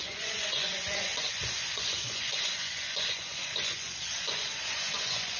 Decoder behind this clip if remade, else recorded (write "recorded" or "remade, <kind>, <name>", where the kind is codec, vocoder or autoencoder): remade, vocoder, Vocos